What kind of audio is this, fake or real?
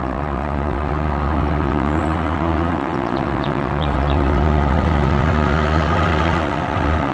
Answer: fake